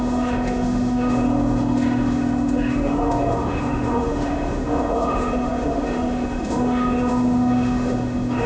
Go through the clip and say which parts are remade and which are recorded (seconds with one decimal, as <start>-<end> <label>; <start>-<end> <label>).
0.0-8.5 remade